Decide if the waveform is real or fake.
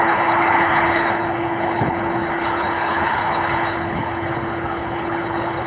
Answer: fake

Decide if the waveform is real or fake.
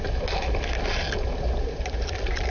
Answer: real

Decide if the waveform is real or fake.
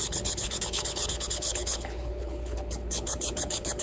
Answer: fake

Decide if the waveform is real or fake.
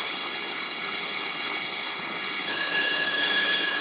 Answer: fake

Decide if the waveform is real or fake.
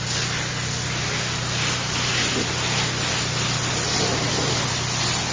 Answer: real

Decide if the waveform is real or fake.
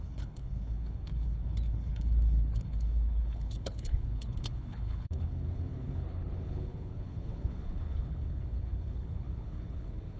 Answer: fake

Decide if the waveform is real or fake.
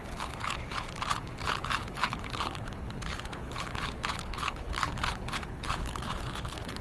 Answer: fake